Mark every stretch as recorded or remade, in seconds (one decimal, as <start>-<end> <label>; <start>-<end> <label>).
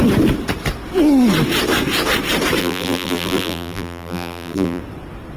0.0-2.6 recorded; 2.6-4.8 remade; 4.8-5.4 recorded